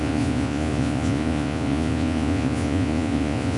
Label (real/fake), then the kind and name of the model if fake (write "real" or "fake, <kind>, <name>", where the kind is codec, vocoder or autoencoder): fake, vocoder, Vocos